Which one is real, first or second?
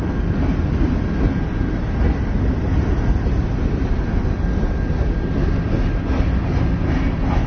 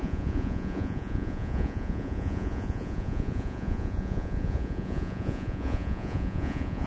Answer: first